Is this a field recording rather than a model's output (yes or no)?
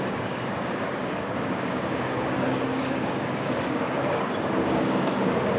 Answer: no